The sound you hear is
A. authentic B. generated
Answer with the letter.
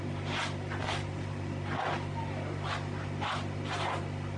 A